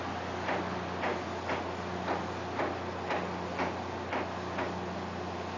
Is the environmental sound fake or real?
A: real